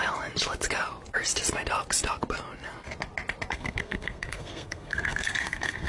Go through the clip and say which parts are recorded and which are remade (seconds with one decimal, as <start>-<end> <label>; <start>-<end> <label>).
0.0-3.5 recorded; 3.5-5.9 remade